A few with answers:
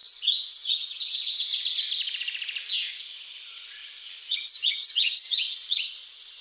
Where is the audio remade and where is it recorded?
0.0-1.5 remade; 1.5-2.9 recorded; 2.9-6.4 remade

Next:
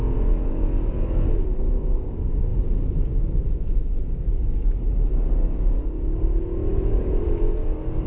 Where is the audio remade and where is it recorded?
0.0-6.7 recorded; 6.7-7.5 remade; 7.5-8.1 recorded

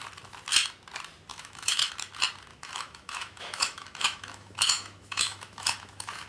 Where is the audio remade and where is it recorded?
0.0-1.3 recorded; 1.3-1.9 remade; 1.9-2.5 recorded; 2.5-6.3 remade

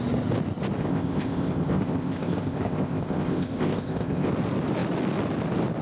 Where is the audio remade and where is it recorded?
0.0-0.8 recorded; 0.8-4.3 remade; 4.3-5.8 recorded

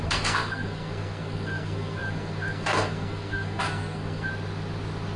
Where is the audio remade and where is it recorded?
0.0-4.3 remade; 4.3-5.2 recorded

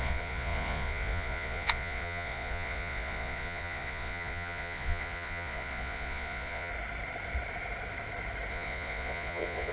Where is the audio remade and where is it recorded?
0.0-6.7 remade; 6.7-8.5 recorded; 8.5-9.7 remade

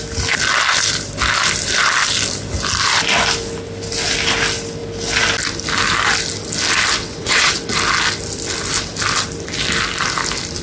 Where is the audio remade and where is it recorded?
0.0-7.0 recorded; 7.0-7.5 remade; 7.5-10.6 recorded